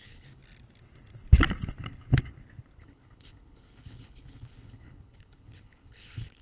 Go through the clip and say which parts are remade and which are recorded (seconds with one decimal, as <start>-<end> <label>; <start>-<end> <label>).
0.0-0.4 remade; 0.4-2.8 recorded; 2.8-6.4 remade